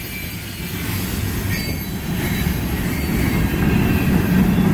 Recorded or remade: recorded